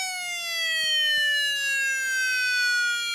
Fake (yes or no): no